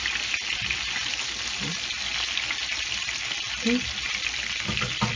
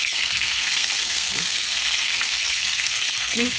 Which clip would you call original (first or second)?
first